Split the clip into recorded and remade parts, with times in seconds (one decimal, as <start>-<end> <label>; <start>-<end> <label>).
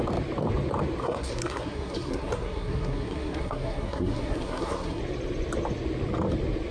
0.0-1.0 recorded; 1.0-5.0 remade; 5.0-6.7 recorded